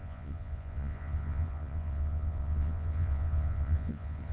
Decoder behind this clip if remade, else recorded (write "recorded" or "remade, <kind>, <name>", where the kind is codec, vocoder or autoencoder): remade, vocoder, Vocos